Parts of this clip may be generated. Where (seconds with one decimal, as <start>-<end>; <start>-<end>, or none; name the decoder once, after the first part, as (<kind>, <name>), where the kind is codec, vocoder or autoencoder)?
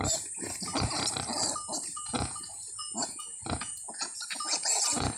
1.9-5.2 (vocoder, Vocos)